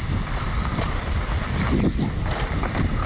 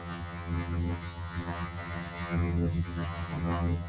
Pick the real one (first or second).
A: first